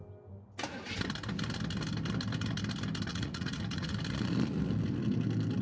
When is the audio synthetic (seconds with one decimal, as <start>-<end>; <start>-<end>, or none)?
3.1-3.9